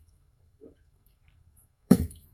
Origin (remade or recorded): remade